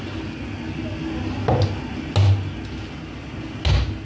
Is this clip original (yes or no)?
yes